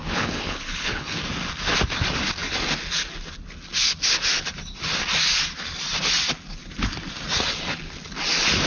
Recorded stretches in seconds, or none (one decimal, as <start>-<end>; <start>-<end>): 1.2-8.7